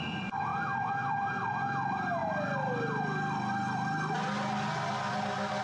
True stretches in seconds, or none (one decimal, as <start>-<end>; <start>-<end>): 0.0-5.6